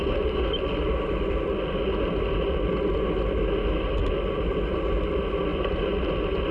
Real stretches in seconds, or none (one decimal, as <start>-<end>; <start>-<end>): 0.0-6.5